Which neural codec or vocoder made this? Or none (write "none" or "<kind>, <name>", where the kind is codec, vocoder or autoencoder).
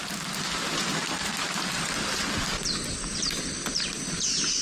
vocoder, BigVGAN v2